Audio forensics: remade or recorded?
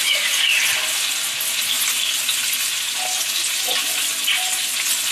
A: remade